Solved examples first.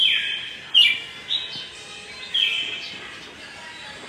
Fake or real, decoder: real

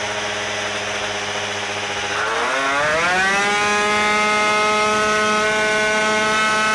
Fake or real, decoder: real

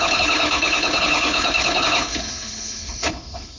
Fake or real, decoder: fake, codec, HILCodec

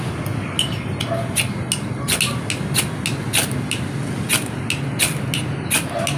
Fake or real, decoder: real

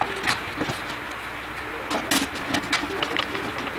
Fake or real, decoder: real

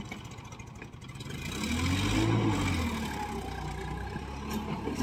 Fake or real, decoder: real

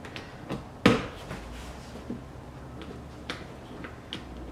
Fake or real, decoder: real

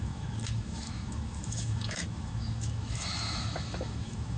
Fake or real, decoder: fake, autoencoder, DAC-VAE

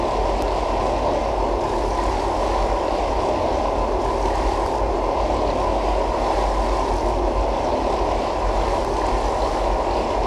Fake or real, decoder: real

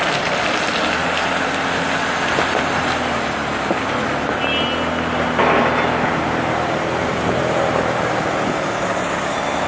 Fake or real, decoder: real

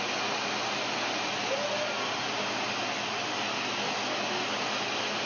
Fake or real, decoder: real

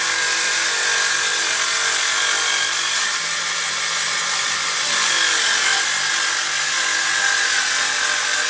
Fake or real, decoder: real